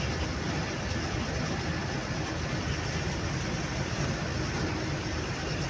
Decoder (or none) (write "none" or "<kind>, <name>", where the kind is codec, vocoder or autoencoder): none